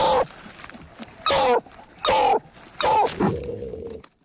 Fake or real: real